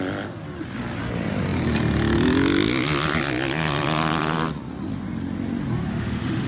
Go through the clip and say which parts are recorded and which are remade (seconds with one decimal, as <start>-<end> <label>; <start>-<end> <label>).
0.0-5.9 recorded; 5.9-6.5 remade